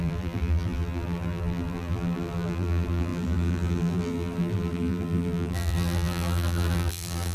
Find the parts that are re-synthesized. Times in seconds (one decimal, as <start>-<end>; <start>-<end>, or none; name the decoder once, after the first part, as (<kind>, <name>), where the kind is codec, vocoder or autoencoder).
0.0-7.3 (vocoder, BigVGAN v2)